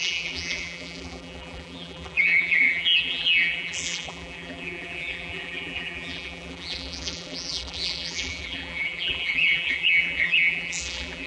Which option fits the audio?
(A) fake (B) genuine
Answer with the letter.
A